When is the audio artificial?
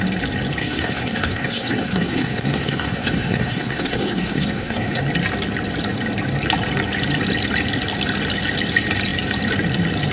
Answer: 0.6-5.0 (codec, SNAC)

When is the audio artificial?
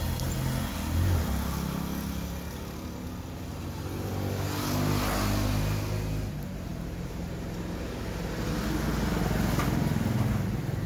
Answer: none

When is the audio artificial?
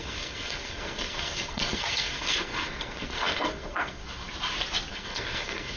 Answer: 0.0-4.0 (codec, SNAC); 4.9-5.8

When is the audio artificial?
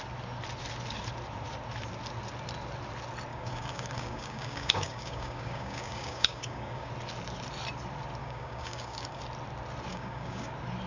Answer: 3.3-6.9 (codec, DAC); 8.2-9.2; 9.9-10.5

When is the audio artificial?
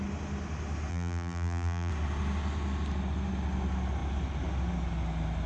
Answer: 0.9-1.9 (vocoder, BigVGAN v2)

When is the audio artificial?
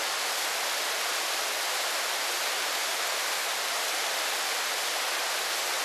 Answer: none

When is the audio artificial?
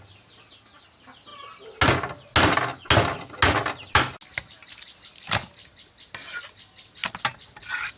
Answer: none